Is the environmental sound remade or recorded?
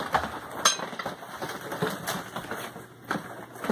recorded